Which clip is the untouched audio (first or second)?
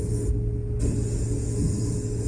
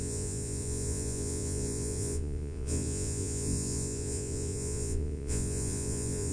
first